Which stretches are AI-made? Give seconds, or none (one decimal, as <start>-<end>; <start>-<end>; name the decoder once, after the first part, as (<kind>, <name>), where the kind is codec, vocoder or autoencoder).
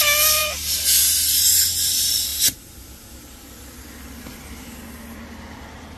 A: none